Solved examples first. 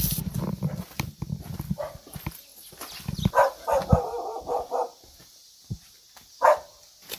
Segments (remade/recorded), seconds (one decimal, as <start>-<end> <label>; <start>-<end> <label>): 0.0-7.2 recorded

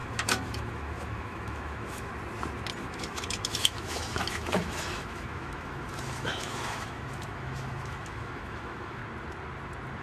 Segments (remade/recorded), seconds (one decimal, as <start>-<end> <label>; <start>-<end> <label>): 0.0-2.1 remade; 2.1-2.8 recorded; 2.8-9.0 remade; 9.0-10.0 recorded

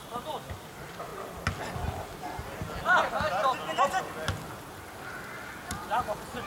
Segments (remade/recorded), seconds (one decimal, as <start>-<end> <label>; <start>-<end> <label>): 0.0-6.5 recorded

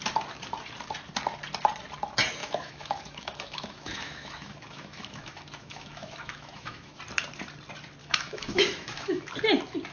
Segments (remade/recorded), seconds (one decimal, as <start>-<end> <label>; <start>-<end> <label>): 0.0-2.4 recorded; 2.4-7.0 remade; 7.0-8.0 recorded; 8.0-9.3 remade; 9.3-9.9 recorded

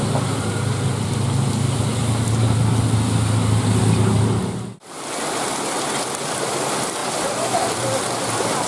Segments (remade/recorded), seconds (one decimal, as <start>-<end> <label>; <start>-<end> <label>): 0.0-8.7 recorded